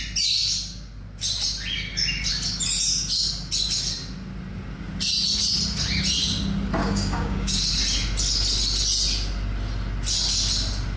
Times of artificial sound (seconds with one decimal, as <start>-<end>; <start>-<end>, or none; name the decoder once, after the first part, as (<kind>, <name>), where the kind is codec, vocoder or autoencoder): 6.8-7.6 (codec, DAC)

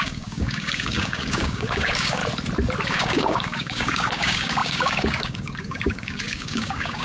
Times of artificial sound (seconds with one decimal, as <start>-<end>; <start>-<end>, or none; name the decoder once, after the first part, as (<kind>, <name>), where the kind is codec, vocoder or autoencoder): 0.0-2.2 (codec, DAC); 2.9-7.0

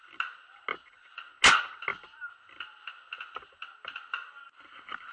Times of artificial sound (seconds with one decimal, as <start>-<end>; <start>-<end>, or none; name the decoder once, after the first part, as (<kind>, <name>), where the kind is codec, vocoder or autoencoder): none

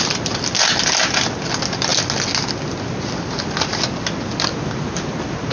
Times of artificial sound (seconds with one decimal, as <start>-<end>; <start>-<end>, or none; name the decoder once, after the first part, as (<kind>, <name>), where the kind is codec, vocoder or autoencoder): none